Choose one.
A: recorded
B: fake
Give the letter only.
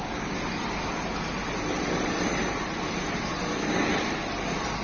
A